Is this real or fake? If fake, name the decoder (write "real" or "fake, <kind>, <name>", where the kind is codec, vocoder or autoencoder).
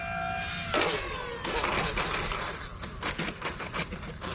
real